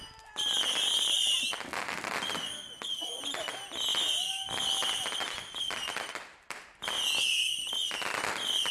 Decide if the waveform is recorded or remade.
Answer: recorded